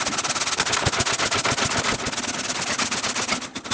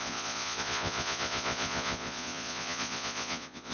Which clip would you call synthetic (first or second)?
second